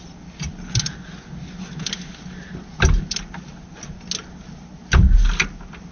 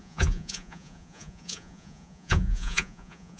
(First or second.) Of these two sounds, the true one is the first